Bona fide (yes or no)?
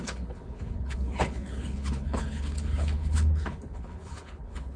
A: no